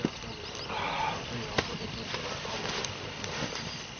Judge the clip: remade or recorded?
recorded